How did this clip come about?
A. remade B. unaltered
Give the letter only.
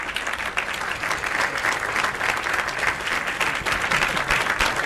B